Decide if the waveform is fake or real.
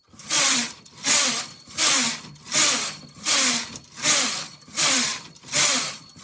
fake